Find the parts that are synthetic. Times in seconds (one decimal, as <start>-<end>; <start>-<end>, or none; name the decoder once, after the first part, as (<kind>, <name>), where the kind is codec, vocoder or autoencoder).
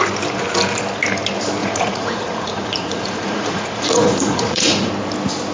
1.6-4.9 (vocoder, Vocos)